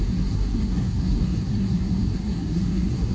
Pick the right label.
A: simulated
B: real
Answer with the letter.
A